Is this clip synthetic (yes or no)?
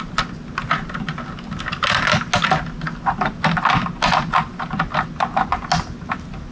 no